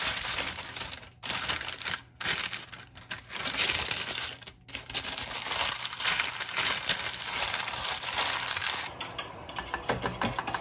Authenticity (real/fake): real